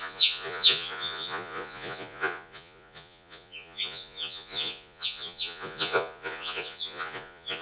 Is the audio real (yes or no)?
no